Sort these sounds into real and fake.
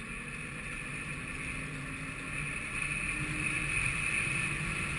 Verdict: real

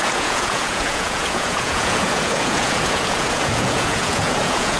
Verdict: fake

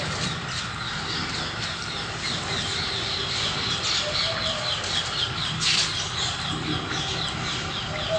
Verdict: real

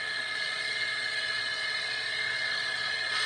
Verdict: fake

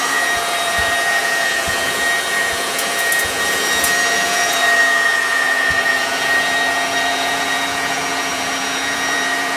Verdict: fake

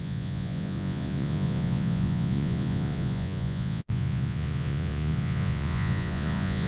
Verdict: fake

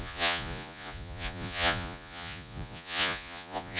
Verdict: fake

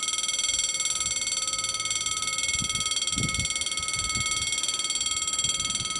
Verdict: real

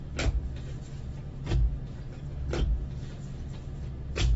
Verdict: real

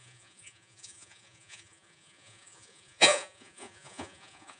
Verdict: fake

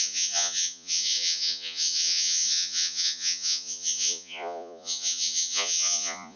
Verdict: fake